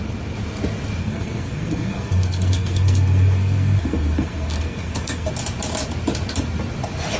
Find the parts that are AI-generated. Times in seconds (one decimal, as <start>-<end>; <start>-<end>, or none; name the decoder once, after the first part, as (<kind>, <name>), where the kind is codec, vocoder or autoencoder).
1.0-5.3 (codec, SNAC)